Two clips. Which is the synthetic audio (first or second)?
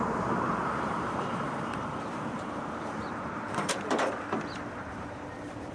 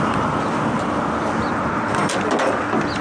first